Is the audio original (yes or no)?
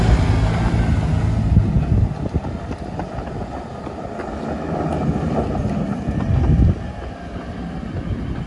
yes